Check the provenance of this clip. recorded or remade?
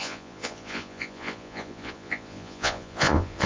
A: remade